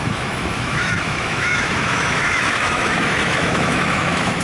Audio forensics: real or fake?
fake